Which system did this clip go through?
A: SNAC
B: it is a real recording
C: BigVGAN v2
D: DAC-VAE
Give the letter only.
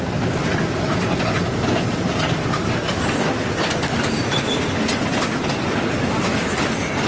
B